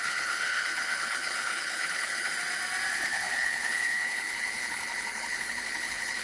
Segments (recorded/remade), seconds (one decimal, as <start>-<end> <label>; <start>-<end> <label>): 0.0-2.3 remade; 2.3-2.9 recorded; 2.9-6.2 remade